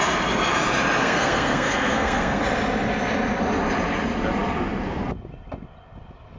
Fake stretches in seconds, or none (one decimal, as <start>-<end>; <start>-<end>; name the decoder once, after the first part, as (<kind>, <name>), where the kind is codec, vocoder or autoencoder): 1.0-2.4 (codec, SNAC)